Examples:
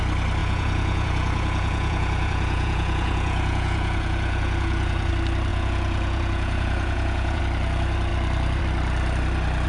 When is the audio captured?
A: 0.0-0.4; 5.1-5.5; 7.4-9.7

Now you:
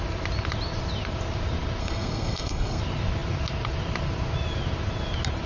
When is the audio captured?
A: 0.0-1.8; 2.8-5.5

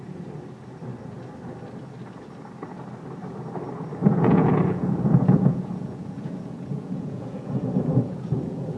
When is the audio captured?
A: 0.0-4.0

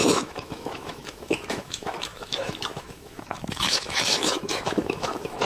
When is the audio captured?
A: none